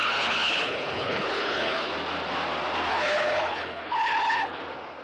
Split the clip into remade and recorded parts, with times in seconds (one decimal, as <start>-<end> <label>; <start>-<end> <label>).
0.0-1.9 remade; 1.9-2.9 recorded; 2.9-4.6 remade; 4.6-5.0 recorded